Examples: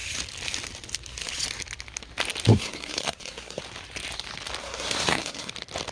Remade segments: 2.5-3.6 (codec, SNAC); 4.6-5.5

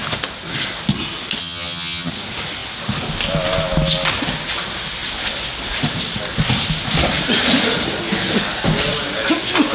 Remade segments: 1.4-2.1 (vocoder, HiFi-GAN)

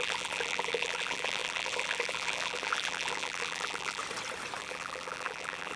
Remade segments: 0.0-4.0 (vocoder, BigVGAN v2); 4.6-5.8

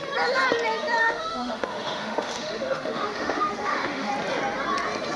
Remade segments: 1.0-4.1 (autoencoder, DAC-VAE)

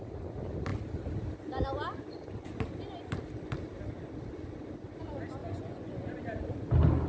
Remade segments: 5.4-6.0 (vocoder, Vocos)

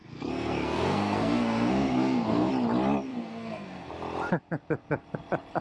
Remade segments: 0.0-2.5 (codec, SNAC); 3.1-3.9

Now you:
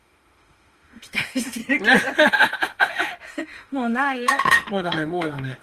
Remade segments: 0.0-1.6 (autoencoder, DAC-VAE); 2.3-5.6

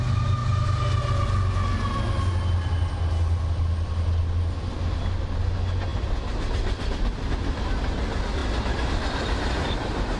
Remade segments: none